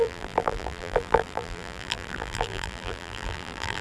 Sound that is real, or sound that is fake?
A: fake